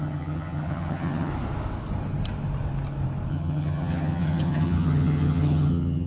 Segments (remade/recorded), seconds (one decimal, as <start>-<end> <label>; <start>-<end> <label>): 0.0-1.3 remade; 1.3-3.3 recorded; 3.3-6.1 remade